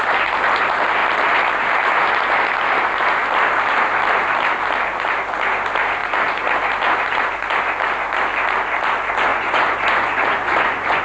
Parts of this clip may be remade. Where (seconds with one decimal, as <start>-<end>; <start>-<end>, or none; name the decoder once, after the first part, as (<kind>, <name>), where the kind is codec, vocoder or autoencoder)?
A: 9.3-11.0 (vocoder, Vocos)